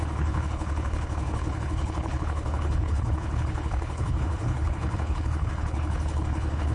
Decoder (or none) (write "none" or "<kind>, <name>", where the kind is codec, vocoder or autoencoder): codec, HILCodec